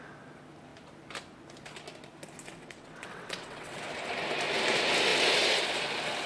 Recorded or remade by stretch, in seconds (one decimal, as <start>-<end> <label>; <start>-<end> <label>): 0.0-2.4 recorded; 2.4-3.8 remade; 3.8-6.3 recorded